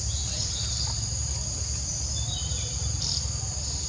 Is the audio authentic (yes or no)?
yes